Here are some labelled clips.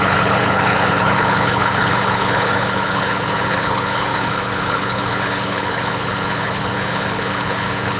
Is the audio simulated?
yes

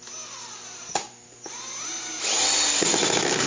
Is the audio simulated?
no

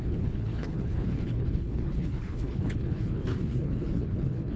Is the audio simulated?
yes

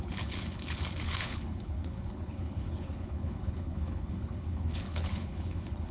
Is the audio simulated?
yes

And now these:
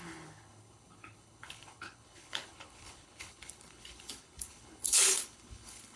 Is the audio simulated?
yes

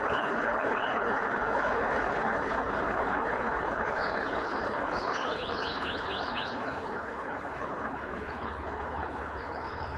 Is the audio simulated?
yes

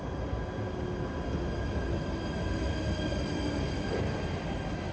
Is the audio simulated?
no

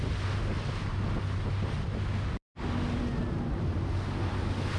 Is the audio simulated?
no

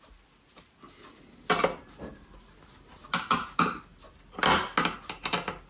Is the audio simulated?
no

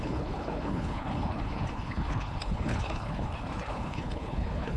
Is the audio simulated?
yes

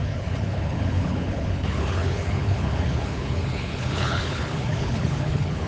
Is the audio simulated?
yes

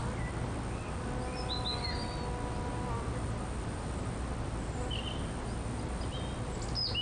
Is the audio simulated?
no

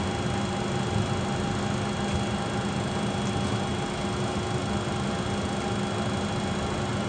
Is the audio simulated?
no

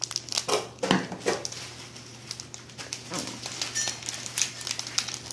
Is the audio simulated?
no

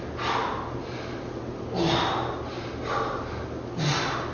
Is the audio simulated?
no